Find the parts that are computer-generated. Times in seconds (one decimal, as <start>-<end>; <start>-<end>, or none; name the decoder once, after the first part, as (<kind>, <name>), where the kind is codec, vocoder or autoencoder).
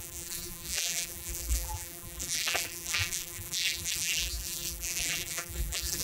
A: 0.0-6.0 (vocoder, BigVGAN v2)